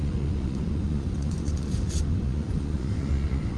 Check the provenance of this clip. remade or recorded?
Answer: remade